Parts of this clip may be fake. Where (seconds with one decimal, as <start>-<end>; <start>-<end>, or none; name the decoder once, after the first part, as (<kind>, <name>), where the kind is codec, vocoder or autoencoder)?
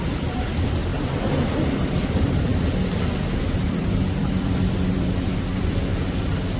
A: 0.0-2.5 (vocoder, BigVGAN v2); 3.5-5.9